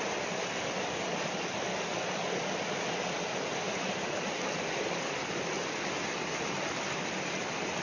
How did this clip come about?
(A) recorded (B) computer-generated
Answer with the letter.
A